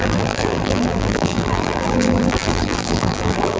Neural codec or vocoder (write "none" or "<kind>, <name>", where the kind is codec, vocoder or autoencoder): vocoder, BigVGAN v2